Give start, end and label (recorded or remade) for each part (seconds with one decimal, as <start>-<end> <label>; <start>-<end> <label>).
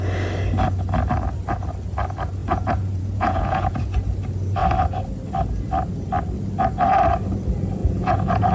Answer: 0.0-2.4 recorded; 2.4-4.0 remade; 4.0-7.8 recorded; 7.8-8.5 remade